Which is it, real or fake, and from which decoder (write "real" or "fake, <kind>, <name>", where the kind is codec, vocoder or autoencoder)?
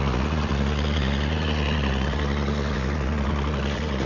fake, vocoder, Vocos